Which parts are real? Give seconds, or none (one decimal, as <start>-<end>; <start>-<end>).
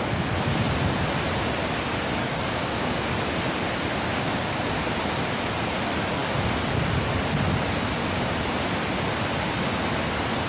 0.0-2.2; 3.0-4.1; 4.7-10.5